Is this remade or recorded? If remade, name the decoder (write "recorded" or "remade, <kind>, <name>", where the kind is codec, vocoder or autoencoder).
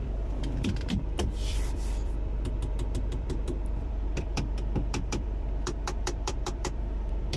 remade, vocoder, BigVGAN v2